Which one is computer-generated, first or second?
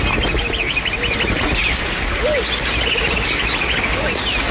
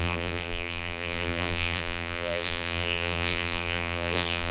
second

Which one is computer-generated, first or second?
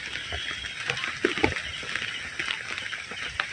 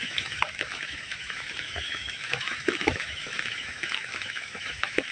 second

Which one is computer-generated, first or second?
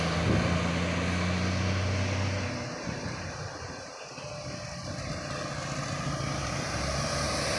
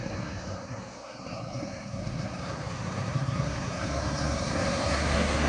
second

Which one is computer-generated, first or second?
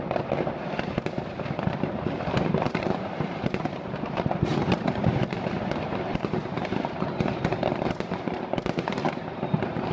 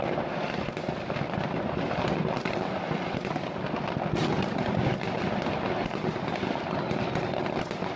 first